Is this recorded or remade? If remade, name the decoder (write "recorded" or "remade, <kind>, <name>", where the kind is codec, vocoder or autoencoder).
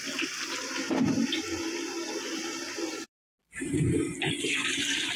recorded